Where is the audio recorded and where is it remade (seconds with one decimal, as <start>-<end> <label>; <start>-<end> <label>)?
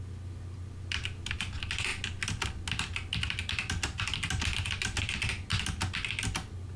0.0-6.8 recorded